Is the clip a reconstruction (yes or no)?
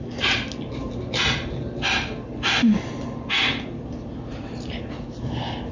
no